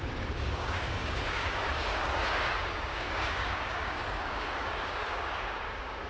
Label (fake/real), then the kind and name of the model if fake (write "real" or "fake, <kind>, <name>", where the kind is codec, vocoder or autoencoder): fake, codec, DAC